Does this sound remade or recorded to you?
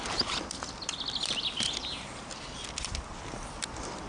recorded